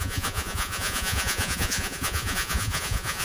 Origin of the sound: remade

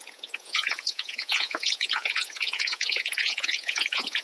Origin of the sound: remade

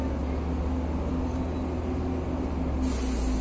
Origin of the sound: recorded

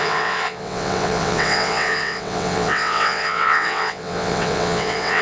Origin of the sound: remade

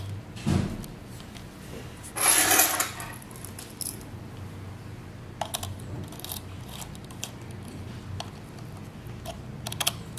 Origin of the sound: recorded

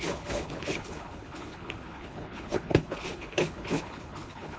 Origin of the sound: remade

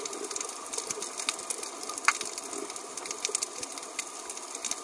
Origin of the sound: recorded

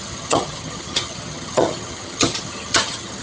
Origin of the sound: remade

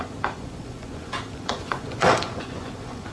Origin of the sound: remade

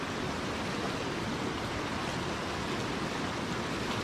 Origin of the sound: recorded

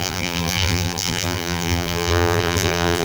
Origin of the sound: remade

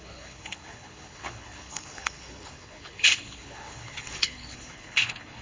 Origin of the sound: remade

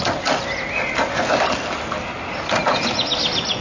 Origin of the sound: recorded